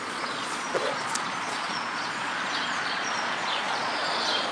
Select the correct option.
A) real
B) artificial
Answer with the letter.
B